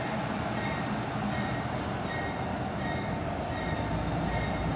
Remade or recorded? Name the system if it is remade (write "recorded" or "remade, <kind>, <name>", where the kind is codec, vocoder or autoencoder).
recorded